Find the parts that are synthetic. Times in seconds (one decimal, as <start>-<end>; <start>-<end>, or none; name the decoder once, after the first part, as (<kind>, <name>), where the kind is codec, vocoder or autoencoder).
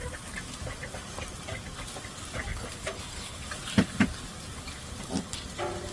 2.5-3.4 (codec, HILCodec)